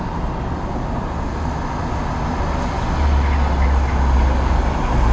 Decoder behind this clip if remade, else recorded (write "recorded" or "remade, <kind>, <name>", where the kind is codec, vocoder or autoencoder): recorded